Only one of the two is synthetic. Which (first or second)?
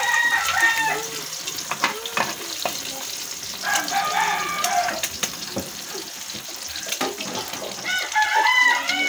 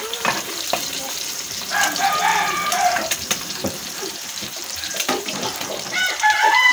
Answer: second